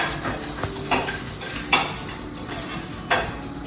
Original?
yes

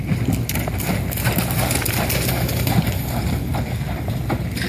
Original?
yes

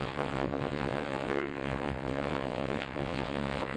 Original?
no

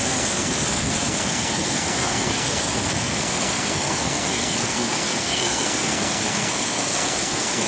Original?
no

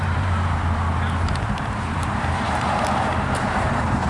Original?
no